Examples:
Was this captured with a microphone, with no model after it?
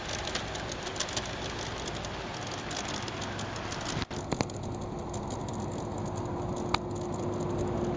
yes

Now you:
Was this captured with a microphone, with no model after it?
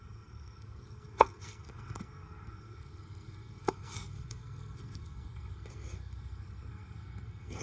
no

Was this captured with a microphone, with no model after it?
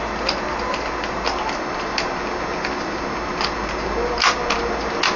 yes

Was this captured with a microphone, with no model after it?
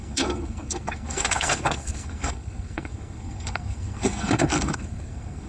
no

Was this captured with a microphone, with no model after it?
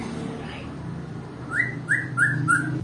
yes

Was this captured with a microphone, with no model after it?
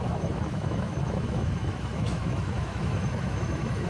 no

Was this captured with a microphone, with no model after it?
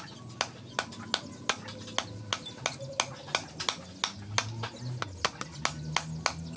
yes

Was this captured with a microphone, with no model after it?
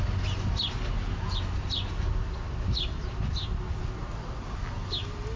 yes